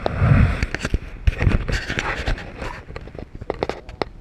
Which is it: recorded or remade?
recorded